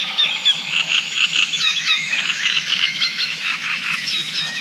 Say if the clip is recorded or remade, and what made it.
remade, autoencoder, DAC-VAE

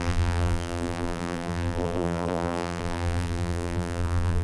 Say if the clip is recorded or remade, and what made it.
remade, vocoder, BigVGAN v2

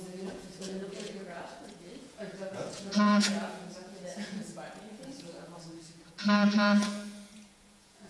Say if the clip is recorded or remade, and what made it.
remade, vocoder, Vocos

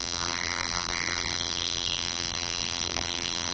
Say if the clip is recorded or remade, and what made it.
remade, vocoder, BigVGAN v2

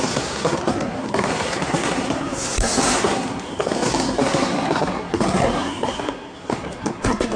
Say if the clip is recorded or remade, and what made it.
remade, codec, SNAC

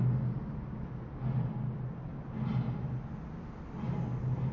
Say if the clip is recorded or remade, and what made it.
recorded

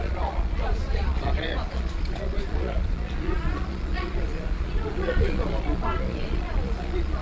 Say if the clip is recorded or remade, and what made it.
remade, vocoder, Vocos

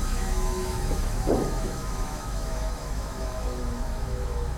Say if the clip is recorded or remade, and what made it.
remade, autoencoder, DAC-VAE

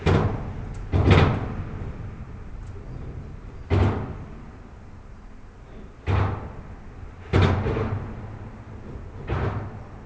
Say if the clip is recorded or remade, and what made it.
recorded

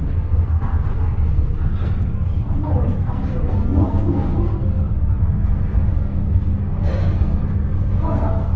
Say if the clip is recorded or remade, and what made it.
remade, codec, SNAC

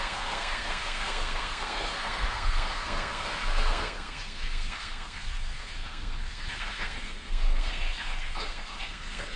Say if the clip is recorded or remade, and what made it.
remade, codec, SNAC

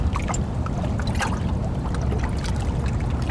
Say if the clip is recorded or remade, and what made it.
recorded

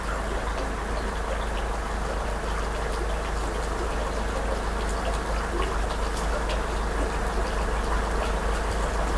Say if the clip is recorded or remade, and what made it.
recorded